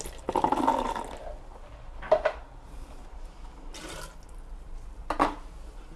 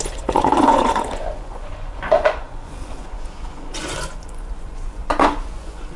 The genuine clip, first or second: first